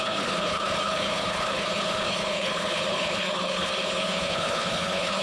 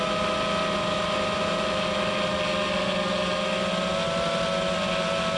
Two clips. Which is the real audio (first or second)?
second